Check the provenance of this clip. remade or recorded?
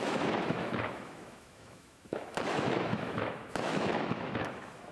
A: remade